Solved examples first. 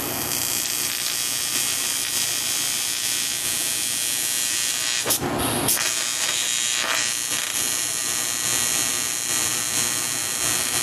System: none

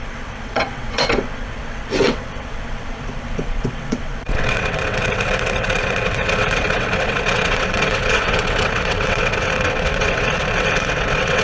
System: vocoder, WaveNeXt